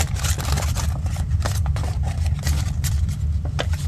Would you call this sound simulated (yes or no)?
yes